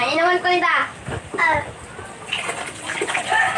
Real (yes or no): yes